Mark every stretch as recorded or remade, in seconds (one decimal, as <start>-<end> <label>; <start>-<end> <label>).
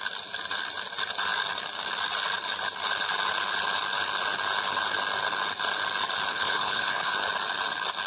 0.0-6.3 recorded; 6.3-7.1 remade; 7.1-8.1 recorded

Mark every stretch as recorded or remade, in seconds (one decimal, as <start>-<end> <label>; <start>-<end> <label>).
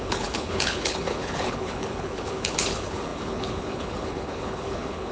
0.0-5.1 remade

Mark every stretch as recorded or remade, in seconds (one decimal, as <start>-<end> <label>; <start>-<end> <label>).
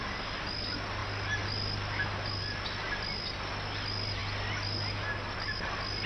0.0-6.1 recorded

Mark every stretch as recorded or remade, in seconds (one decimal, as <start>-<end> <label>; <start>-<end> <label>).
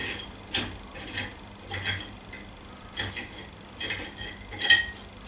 0.0-5.3 recorded